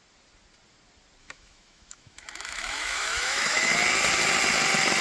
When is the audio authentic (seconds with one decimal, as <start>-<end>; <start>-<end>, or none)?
0.0-1.2; 3.7-5.0